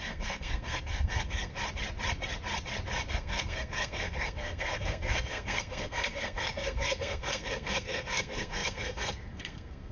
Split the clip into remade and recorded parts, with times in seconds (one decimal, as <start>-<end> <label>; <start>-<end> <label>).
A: 0.0-1.5 remade; 1.5-3.1 recorded; 3.1-9.9 remade